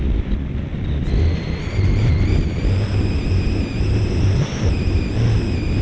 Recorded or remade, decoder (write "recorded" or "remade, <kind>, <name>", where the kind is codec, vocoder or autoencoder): recorded